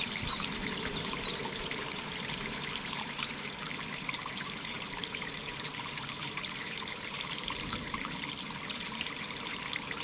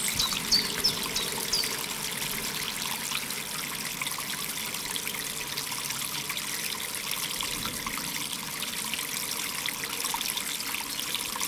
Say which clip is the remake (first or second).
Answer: first